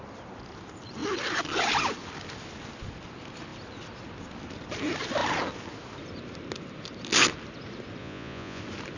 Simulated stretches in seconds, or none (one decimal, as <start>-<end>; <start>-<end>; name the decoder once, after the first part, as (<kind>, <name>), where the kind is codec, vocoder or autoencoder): 8.0-8.6 (vocoder, Vocos)